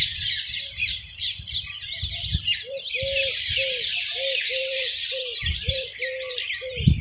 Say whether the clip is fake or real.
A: fake